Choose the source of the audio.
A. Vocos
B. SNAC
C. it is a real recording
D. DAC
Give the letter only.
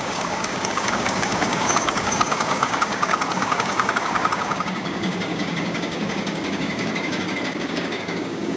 D